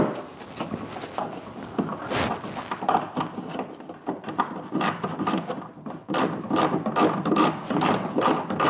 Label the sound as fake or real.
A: real